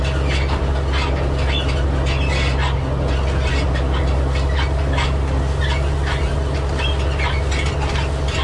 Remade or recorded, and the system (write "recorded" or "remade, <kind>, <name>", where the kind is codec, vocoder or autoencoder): recorded